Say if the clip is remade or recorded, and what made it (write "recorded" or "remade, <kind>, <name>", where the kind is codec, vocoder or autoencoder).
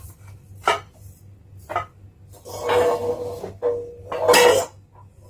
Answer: recorded